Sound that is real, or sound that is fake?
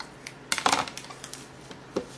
real